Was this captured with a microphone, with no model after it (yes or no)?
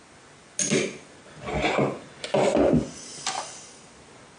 yes